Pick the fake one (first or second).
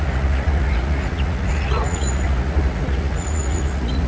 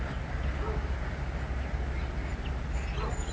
first